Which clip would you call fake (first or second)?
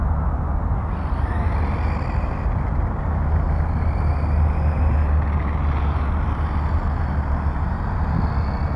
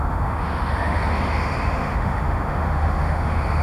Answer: second